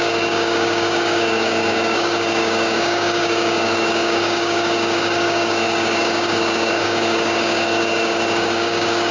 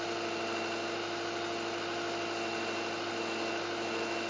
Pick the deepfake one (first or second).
first